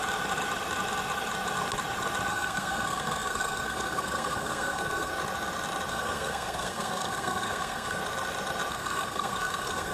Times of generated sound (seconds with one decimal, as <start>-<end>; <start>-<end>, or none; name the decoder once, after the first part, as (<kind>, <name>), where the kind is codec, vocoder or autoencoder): 2.3-5.1 (codec, SNAC); 5.9-8.0; 8.7-9.9